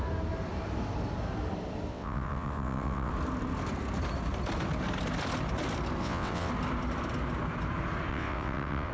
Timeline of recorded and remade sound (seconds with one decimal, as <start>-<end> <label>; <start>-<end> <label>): 0.0-1.9 recorded; 1.9-3.1 remade; 3.1-6.0 recorded; 6.0-6.5 remade; 6.5-8.1 recorded; 8.1-8.9 remade